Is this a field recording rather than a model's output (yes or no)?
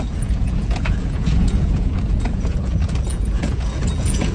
no